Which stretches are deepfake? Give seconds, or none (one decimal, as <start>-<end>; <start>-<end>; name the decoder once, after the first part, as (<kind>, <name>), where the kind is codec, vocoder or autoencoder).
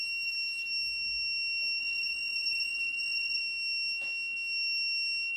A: 1.8-3.4 (vocoder, BigVGAN v2)